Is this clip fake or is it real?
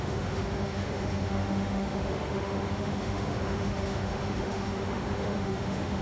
fake